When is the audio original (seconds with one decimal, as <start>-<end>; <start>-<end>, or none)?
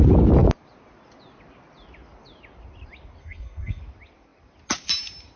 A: 0.0-3.2; 3.8-5.4